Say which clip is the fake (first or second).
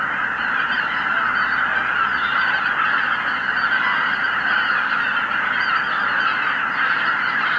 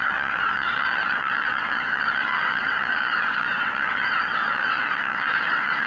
second